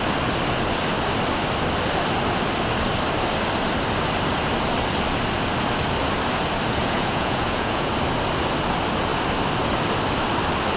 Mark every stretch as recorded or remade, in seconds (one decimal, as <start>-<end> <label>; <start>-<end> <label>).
0.0-6.8 recorded; 6.8-7.9 remade; 7.9-10.8 recorded